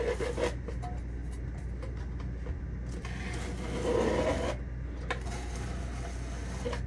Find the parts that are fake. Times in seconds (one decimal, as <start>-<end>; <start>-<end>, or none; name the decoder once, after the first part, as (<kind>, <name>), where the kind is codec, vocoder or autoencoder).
none